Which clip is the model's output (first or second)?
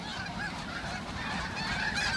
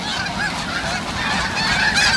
first